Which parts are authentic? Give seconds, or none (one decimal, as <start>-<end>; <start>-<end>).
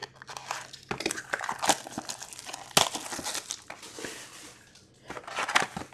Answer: 0.0-5.9